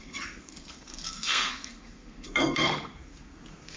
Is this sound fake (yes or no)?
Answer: yes